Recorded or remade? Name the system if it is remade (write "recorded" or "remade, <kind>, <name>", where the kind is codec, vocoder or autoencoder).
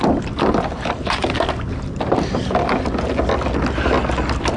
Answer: recorded